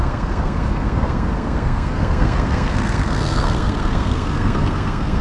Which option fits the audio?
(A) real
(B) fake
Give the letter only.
B